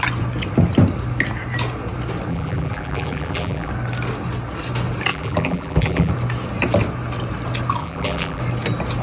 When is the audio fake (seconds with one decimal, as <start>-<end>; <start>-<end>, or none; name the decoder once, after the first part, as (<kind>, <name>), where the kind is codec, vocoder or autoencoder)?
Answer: 2.3-3.7 (vocoder, BigVGAN v2); 5.1-6.1; 7.8-8.4

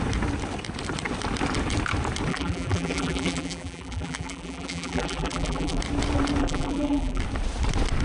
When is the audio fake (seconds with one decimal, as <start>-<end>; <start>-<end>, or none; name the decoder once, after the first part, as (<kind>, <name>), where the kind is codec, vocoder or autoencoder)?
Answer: 2.3-5.8 (vocoder, BigVGAN v2); 6.4-7.2

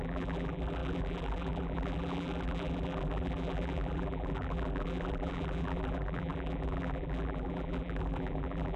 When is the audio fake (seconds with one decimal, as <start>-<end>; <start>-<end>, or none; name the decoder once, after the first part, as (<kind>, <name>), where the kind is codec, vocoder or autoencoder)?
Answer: 0.0-8.8 (vocoder, BigVGAN v2)

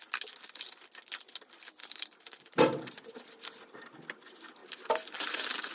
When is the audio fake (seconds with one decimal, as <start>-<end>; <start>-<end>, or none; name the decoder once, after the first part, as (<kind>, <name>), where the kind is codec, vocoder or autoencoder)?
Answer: 1.8-3.2 (vocoder, BigVGAN v2); 4.6-5.7

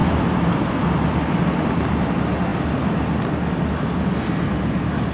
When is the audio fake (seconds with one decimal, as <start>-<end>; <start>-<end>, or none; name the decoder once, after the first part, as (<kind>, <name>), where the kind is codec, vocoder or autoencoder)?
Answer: none

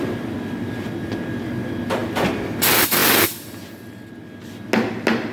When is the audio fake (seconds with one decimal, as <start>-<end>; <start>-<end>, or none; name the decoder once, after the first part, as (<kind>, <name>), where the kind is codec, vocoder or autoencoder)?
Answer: none

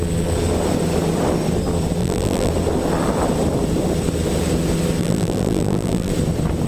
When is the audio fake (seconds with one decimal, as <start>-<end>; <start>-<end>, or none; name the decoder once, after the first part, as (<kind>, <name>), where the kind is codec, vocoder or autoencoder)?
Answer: 2.0-2.5 (vocoder, BigVGAN v2); 5.0-6.1